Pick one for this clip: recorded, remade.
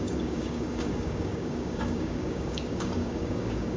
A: remade